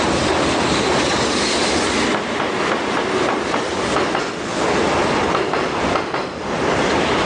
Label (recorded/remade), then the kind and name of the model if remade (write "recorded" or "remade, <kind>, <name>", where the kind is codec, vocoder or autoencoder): recorded